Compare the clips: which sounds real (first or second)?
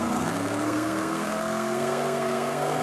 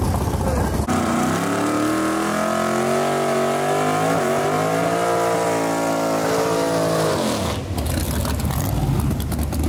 second